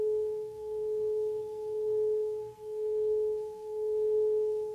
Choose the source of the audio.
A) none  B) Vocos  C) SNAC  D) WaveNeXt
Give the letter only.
C